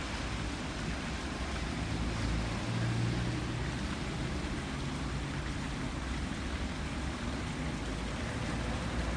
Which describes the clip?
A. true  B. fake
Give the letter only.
A